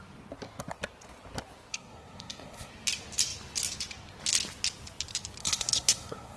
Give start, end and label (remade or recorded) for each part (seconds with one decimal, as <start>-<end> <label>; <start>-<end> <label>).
0.0-1.7 recorded; 1.7-2.7 remade; 2.7-5.4 recorded; 5.4-6.4 remade